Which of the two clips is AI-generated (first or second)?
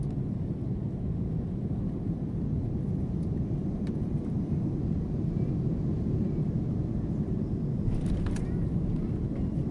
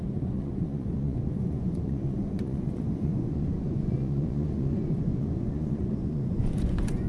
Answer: second